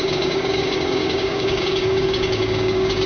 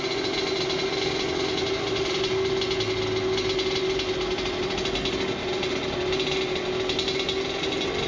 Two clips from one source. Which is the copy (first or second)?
first